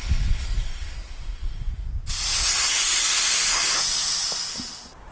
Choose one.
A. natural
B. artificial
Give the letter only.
A